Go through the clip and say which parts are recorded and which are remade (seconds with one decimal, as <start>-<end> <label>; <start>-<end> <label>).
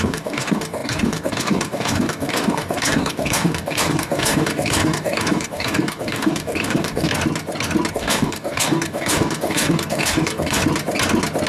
0.0-7.1 remade; 7.1-7.9 recorded; 7.9-10.6 remade; 10.6-11.5 recorded